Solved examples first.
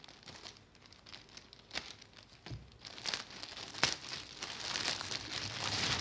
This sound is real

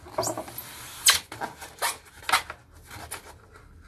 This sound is real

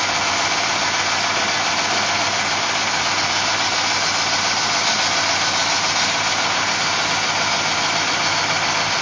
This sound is real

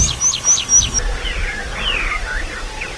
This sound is real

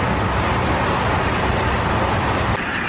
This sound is real